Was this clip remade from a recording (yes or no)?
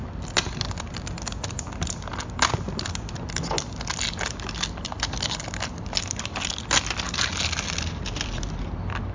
no